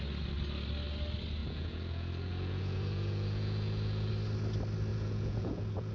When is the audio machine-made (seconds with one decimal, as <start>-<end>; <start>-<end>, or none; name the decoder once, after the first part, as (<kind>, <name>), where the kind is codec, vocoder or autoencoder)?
1.4-4.1 (vocoder, Vocos); 4.9-5.9